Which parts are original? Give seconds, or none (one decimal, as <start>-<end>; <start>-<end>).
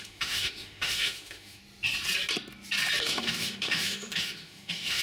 1.6-3.0